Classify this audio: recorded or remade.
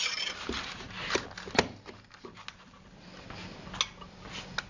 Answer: recorded